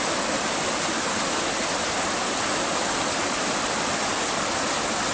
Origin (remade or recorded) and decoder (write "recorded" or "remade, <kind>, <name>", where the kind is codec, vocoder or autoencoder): recorded